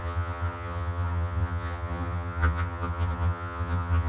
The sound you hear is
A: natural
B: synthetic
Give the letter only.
B